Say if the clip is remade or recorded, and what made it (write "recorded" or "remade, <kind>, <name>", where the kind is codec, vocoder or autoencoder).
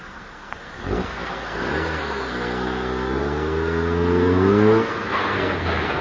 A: remade, codec, SNAC